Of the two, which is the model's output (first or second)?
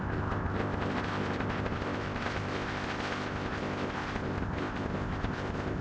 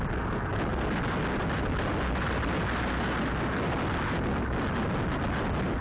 first